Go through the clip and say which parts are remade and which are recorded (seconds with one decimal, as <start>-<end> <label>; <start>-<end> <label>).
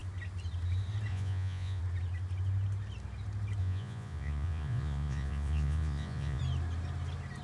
0.0-1.1 recorded; 1.1-1.8 remade; 1.8-3.6 recorded; 3.6-6.4 remade; 6.4-7.4 recorded